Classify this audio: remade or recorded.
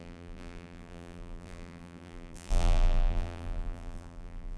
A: remade